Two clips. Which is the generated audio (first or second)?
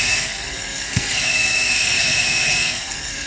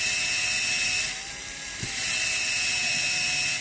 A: first